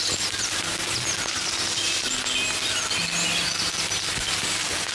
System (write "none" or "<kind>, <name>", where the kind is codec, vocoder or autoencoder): none